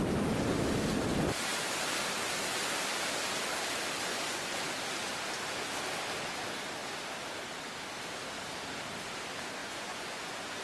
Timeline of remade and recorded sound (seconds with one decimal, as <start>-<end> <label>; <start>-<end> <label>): 0.0-4.1 recorded; 4.1-4.7 remade; 4.7-9.6 recorded; 9.6-10.6 remade